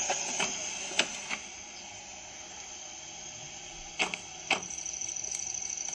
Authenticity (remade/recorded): recorded